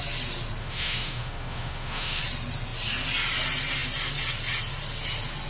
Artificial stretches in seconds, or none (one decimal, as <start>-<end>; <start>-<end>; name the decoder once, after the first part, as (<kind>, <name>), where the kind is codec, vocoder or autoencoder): 0.6-2.2 (autoencoder, DAC-VAE)